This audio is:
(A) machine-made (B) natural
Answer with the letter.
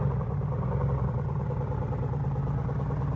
B